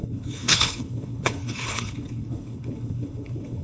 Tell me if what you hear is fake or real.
fake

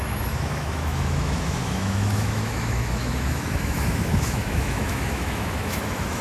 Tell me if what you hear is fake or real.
fake